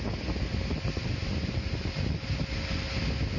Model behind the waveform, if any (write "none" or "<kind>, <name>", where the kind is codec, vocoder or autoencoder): none